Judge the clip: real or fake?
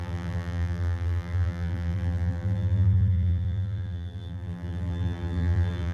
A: fake